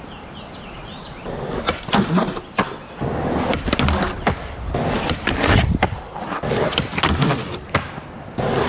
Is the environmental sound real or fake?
real